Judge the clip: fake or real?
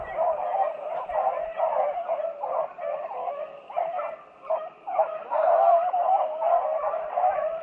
real